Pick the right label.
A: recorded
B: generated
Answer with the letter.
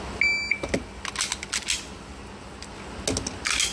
A